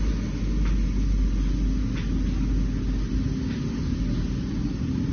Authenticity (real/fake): real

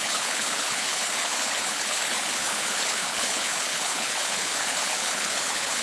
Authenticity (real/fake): fake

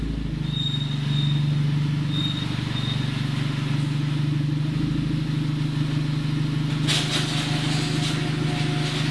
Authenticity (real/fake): real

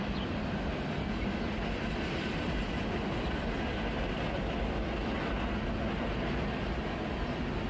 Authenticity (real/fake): real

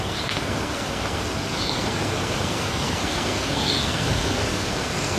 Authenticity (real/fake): fake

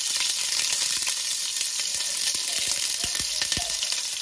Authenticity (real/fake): real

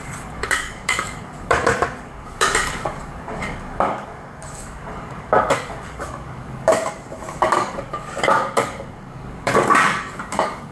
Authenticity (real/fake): fake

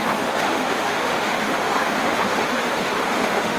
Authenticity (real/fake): fake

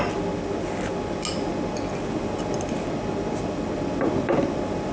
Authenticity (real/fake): real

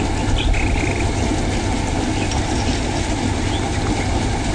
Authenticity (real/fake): real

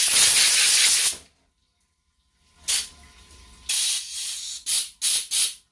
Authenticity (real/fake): real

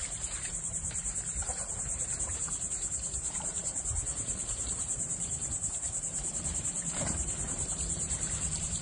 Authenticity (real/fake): fake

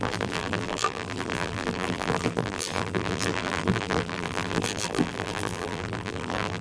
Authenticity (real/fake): fake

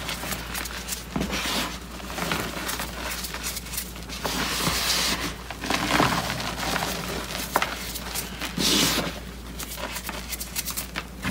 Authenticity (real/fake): real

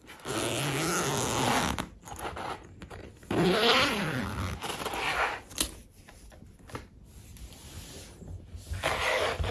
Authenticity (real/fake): real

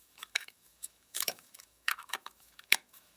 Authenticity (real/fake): fake